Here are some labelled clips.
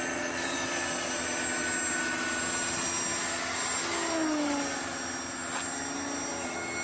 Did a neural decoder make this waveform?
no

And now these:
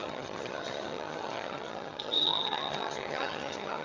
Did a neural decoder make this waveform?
yes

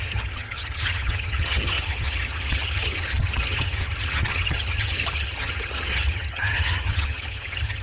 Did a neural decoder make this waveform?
yes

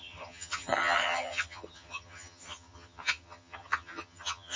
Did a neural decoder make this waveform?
yes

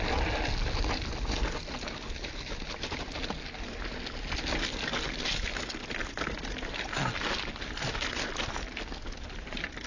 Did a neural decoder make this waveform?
no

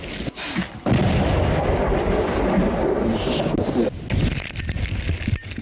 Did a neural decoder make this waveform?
no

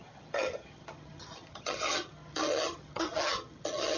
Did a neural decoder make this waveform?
yes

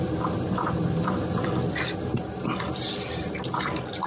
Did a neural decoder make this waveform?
no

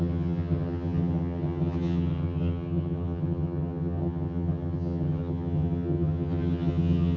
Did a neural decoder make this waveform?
yes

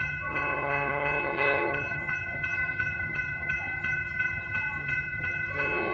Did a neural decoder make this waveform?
yes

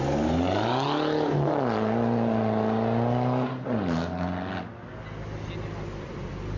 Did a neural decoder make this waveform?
no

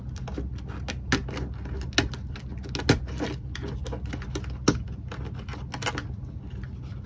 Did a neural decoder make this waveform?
no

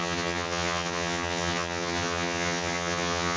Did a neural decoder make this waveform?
yes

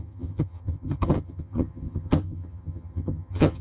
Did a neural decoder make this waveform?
yes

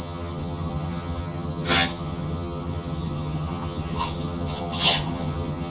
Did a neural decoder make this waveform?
yes